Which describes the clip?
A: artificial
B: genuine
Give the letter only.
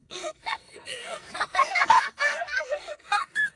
A